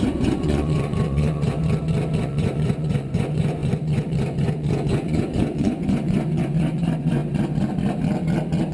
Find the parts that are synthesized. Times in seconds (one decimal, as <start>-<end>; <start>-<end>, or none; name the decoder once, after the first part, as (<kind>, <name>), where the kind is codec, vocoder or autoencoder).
0.0-1.6 (vocoder, Vocos); 2.2-7.2